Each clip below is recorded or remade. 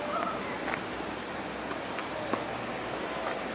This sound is recorded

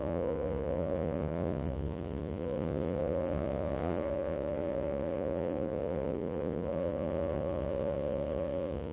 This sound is remade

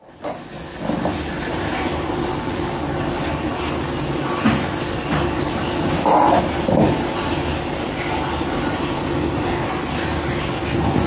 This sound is recorded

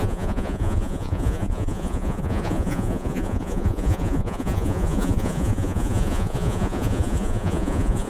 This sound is remade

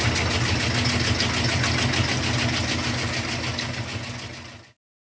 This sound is recorded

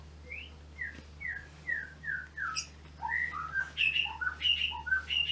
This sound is recorded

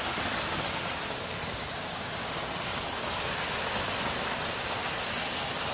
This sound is recorded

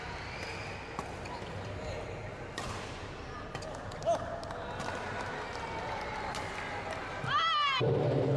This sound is recorded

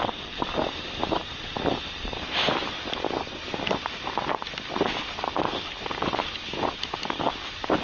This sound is recorded